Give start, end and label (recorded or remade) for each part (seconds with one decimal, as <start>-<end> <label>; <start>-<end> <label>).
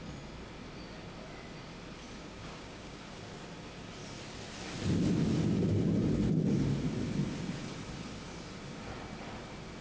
0.0-2.2 recorded; 2.2-3.0 remade; 3.0-9.8 recorded